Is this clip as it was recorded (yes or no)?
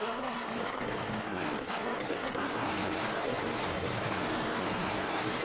no